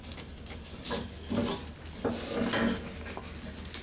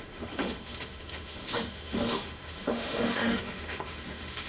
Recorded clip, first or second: first